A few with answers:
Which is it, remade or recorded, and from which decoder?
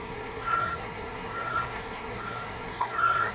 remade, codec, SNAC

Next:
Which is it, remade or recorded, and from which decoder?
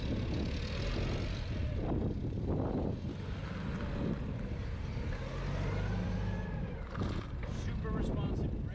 recorded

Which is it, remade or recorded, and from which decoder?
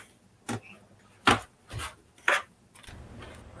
recorded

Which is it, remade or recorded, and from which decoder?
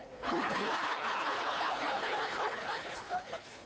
remade, codec, HILCodec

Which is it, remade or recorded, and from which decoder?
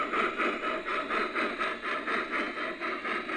recorded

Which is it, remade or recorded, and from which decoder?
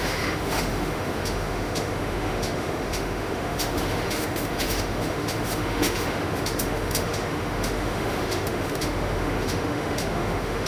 remade, autoencoder, DAC-VAE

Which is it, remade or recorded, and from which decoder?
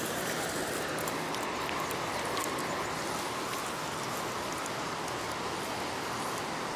recorded